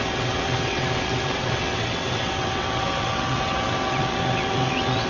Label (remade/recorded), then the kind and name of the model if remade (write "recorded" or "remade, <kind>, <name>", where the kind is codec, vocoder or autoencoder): remade, vocoder, WaveNeXt